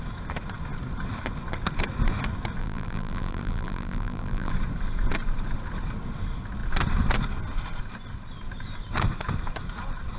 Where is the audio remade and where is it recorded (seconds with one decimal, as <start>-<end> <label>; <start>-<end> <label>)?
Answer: 0.0-2.6 recorded; 2.6-4.5 remade; 4.5-10.2 recorded